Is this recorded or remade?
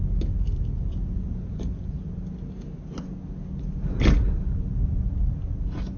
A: recorded